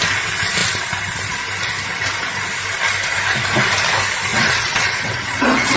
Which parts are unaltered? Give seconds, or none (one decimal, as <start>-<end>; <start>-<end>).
0.0-4.3